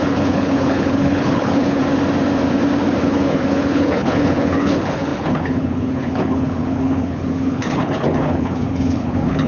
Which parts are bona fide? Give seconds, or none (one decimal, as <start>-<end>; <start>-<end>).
1.8-3.0